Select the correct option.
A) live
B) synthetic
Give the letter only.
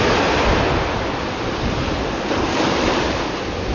B